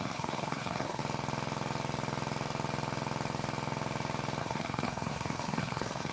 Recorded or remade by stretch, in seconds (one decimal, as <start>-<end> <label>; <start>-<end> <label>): 0.0-1.0 remade; 1.0-4.4 recorded; 4.4-6.1 remade